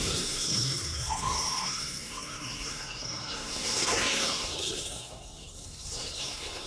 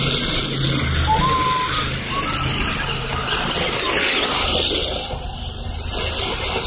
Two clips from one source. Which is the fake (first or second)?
first